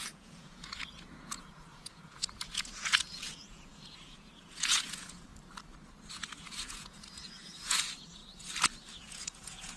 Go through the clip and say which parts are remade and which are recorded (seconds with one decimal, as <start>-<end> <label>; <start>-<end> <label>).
0.0-5.3 remade; 5.3-6.1 recorded; 6.1-8.2 remade; 8.2-9.0 recorded; 9.0-9.8 remade